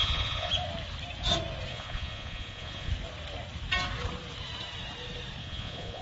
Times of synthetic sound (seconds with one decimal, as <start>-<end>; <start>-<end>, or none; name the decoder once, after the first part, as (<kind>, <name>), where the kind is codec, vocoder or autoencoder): 0.0-0.5 (vocoder, Vocos); 1.7-2.9; 5.4-6.0